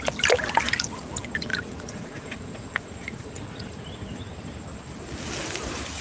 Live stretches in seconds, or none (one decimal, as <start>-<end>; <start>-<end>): 0.0-1.5; 4.4-6.0